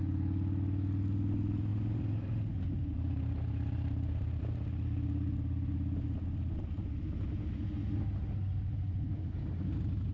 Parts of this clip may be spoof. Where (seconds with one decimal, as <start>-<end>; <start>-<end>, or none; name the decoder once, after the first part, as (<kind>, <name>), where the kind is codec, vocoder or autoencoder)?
1.7-4.4 (vocoder, BigVGAN v2)

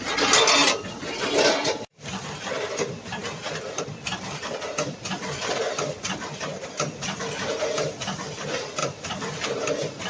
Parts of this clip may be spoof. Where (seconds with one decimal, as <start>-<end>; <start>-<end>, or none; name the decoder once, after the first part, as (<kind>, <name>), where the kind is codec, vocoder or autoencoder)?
3.2-6.7 (vocoder, BigVGAN v2); 8.8-9.5

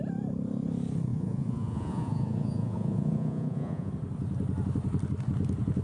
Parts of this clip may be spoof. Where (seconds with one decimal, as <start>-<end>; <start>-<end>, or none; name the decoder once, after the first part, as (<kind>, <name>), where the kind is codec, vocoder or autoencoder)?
1.1-3.9 (vocoder, Vocos)

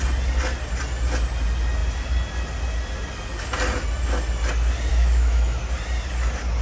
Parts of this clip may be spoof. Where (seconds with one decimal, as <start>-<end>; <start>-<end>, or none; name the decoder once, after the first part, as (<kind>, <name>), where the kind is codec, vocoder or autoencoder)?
4.9-5.6 (autoencoder, DAC-VAE)